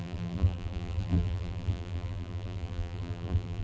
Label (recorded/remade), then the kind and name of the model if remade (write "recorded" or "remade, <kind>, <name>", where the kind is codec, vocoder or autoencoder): remade, vocoder, BigVGAN v2